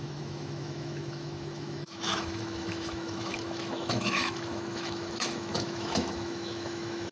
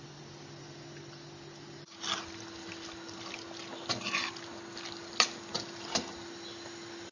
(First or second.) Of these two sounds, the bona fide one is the second